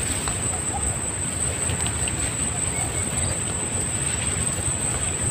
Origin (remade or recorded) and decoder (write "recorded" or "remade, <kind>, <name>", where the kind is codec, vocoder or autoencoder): recorded